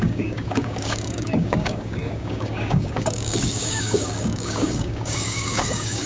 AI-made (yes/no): yes